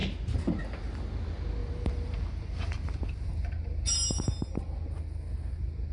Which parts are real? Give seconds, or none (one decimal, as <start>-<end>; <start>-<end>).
0.0-1.6; 2.2-5.9